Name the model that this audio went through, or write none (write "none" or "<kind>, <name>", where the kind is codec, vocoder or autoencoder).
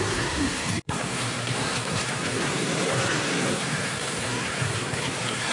codec, SNAC